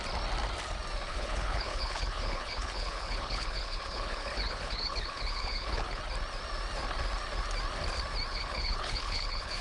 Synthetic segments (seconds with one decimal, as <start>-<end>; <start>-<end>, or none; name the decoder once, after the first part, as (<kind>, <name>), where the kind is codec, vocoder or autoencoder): 1.1-6.0 (codec, HILCodec); 8.3-9.6